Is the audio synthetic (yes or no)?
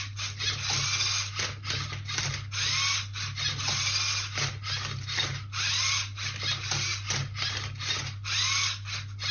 no